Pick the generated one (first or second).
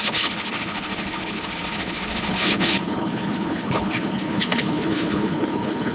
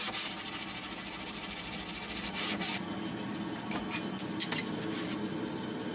first